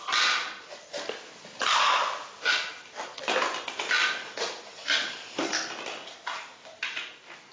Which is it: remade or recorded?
recorded